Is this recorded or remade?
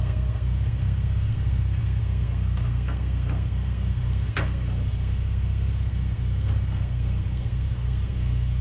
remade